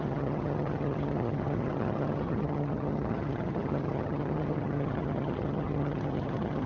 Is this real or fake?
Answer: fake